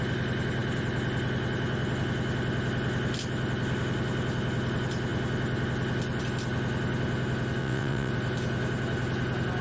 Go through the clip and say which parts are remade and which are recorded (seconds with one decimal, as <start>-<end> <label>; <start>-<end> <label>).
0.0-7.6 recorded; 7.6-8.1 remade; 8.1-9.6 recorded

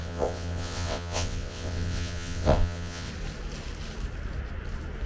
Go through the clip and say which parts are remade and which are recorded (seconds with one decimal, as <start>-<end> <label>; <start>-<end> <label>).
0.0-3.1 remade; 3.1-5.1 recorded

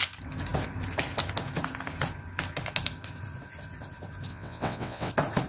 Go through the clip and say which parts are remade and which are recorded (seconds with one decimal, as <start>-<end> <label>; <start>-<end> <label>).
0.0-4.3 recorded; 4.3-5.1 remade; 5.1-5.5 recorded

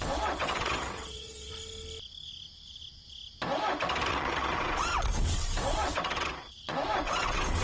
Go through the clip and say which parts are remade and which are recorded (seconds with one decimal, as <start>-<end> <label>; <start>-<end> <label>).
0.0-1.5 remade; 1.5-4.1 recorded; 4.1-7.6 remade

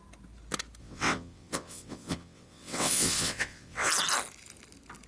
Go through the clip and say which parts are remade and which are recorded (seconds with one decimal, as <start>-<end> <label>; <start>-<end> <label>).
0.0-0.8 recorded; 0.8-3.9 remade; 3.9-5.1 recorded